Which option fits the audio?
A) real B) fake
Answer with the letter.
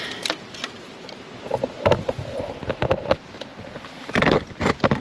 A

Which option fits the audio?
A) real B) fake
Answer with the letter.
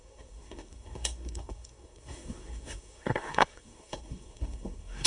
B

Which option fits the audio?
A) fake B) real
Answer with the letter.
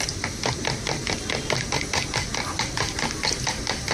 B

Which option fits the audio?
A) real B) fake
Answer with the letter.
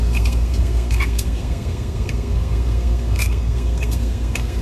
B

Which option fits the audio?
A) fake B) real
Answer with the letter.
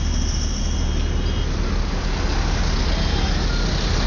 B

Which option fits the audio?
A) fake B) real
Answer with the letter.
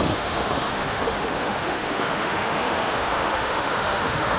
A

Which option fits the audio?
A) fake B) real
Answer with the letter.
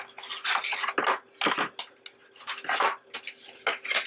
B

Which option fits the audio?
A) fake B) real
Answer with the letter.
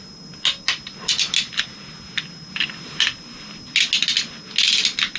B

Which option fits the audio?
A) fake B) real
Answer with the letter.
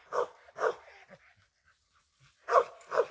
B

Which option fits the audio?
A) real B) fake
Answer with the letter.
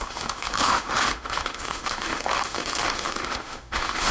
B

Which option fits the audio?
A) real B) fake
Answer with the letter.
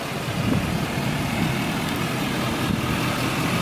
A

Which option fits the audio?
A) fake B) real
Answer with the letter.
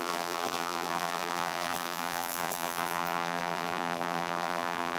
A